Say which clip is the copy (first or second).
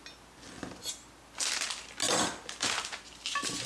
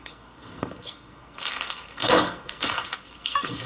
second